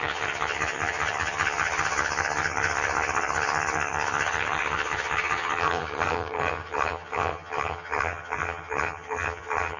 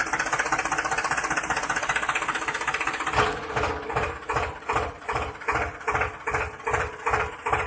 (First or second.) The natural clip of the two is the second